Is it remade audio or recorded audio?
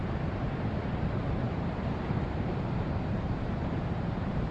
remade